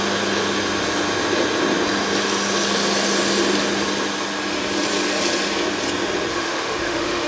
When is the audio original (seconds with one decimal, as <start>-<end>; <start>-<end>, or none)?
0.0-6.3